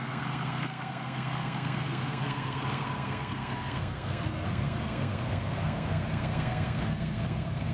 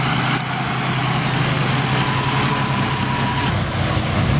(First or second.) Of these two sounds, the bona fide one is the second